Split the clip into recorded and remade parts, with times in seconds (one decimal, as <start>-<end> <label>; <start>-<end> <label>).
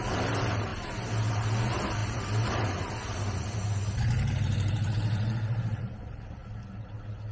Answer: 0.0-0.7 remade; 0.7-1.3 recorded; 1.3-6.4 remade; 6.4-7.3 recorded